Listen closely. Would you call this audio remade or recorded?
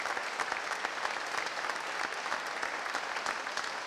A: recorded